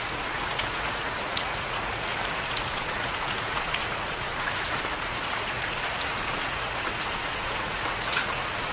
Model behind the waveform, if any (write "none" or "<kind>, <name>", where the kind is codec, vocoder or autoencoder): vocoder, Vocos